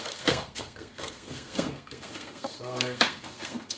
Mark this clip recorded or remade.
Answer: remade